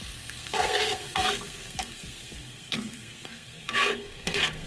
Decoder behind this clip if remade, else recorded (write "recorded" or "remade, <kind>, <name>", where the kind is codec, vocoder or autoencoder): remade, codec, SNAC